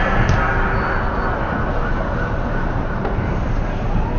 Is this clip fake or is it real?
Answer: real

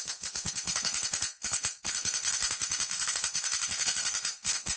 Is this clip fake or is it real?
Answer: fake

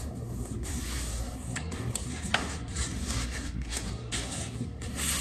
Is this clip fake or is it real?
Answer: fake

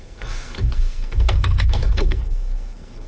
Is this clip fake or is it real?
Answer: fake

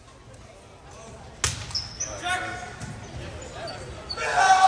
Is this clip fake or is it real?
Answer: real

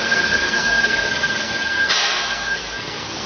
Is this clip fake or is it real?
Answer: fake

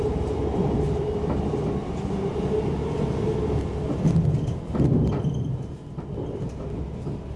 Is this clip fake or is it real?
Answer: real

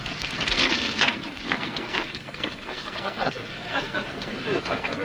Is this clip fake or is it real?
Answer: fake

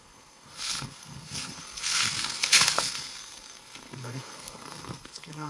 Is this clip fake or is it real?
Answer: fake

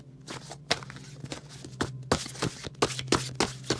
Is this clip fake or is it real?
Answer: real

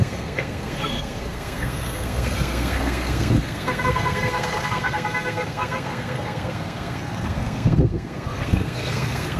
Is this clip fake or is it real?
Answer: fake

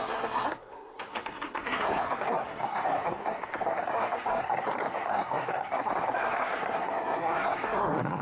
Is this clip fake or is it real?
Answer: fake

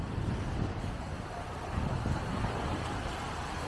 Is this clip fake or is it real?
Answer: real